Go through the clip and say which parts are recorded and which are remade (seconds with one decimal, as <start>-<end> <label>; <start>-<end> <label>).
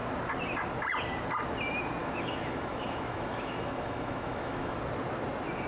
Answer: 0.0-2.0 recorded; 2.0-4.8 remade; 4.8-5.7 recorded